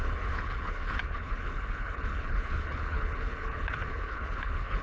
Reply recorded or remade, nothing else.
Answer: remade